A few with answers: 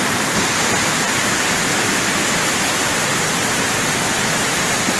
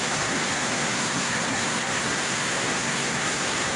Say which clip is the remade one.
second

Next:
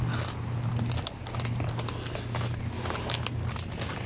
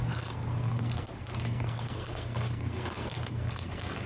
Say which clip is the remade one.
second